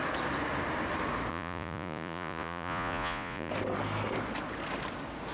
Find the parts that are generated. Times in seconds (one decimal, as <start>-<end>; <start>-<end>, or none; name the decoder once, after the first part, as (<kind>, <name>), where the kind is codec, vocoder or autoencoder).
1.3-3.5 (vocoder, Vocos)